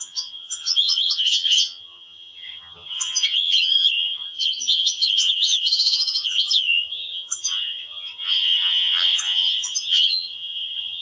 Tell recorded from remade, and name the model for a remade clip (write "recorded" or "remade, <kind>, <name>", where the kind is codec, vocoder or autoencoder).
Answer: remade, vocoder, HiFi-GAN